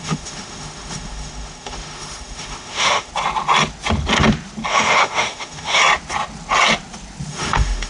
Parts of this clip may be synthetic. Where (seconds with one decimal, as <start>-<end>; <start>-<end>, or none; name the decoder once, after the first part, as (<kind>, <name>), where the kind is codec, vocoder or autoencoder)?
0.0-3.1 (autoencoder, DAC-VAE); 4.7-5.8; 7.3-7.9